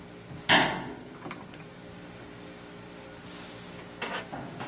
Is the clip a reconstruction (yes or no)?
no